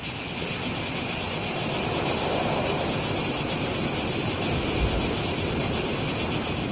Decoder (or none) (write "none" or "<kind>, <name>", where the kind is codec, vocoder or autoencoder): none